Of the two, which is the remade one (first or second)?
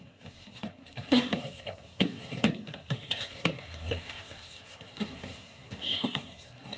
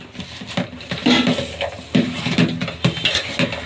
first